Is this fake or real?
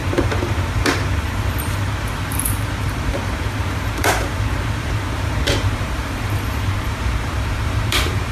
fake